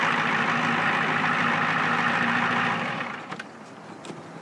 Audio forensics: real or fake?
real